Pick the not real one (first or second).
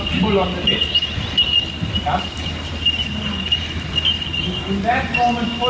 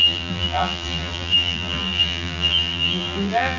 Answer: second